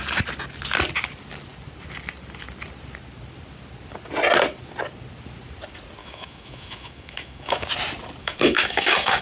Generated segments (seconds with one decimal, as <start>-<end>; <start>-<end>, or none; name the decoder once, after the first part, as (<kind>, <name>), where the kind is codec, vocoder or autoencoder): 6.0-7.7 (autoencoder, DAC-VAE); 8.2-9.2